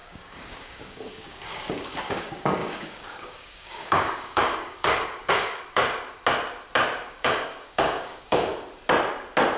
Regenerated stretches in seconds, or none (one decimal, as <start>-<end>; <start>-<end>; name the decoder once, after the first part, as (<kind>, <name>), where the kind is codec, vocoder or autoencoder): 0.0-5.8 (codec, DAC); 7.1-8.5